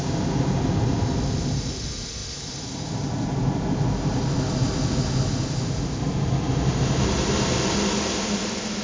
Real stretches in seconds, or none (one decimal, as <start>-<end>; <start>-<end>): 0.0-8.8